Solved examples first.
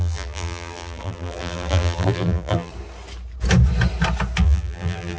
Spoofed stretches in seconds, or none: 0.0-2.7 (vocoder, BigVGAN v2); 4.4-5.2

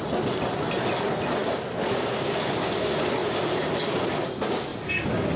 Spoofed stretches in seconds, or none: 3.2-4.1 (vocoder, BigVGAN v2)

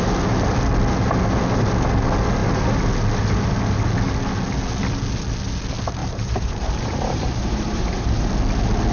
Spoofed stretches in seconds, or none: 6.0-8.3 (vocoder, BigVGAN v2)